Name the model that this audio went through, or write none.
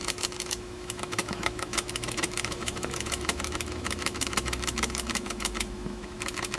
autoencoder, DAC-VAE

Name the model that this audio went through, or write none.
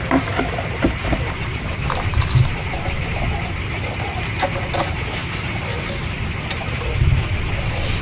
none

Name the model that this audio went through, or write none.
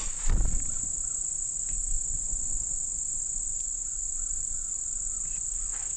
none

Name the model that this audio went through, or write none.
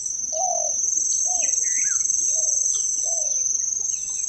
none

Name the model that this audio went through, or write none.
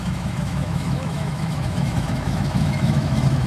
autoencoder, DAC-VAE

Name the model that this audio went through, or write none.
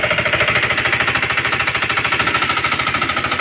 none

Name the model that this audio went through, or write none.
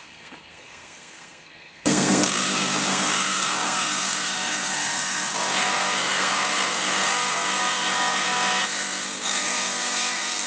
codec, SNAC